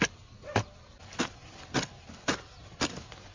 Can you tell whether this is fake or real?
real